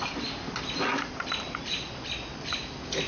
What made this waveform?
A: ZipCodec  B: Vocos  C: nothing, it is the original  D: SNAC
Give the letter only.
C